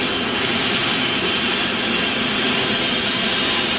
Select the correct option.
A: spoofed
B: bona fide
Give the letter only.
B